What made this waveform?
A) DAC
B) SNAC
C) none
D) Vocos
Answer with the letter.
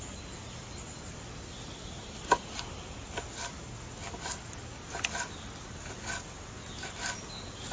C